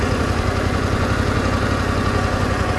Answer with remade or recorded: remade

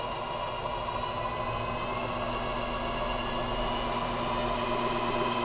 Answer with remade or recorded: recorded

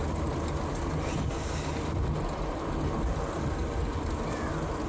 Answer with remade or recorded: recorded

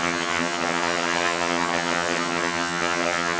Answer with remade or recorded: remade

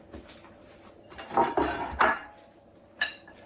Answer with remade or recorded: recorded